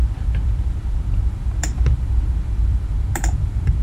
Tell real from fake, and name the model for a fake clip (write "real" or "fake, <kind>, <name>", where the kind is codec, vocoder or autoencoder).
fake, vocoder, BigVGAN v2